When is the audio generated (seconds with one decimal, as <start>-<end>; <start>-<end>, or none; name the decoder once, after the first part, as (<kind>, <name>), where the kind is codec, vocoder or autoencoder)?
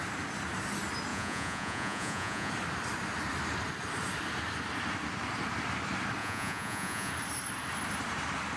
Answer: 1.1-2.5 (vocoder, Vocos); 6.2-7.1